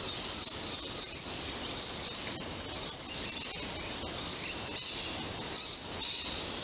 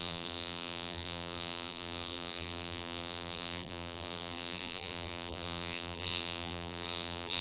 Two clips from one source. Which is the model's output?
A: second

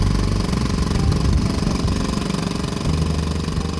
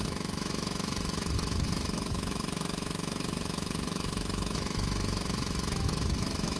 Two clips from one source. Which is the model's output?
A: second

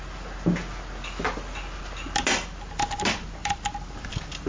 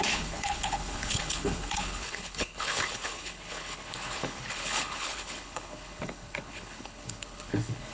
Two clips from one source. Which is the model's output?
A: second